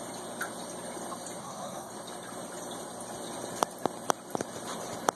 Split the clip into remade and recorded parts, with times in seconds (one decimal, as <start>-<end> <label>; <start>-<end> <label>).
0.0-1.4 recorded; 1.4-1.9 remade; 1.9-5.2 recorded